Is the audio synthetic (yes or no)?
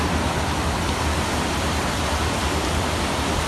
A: yes